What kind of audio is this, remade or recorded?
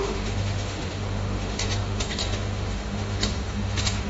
remade